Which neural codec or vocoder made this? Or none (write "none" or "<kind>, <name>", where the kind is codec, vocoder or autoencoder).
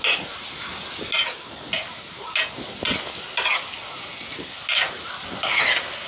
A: none